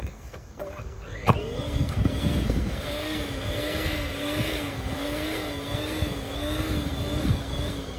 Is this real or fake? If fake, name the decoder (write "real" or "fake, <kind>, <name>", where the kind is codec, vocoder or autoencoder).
fake, codec, SNAC